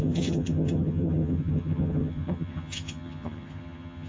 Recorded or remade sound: remade